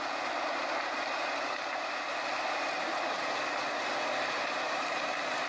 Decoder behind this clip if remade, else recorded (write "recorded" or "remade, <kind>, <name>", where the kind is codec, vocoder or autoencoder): recorded